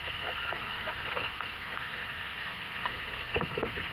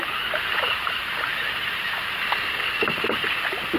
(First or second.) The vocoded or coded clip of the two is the first